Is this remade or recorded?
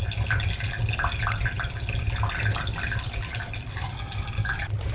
recorded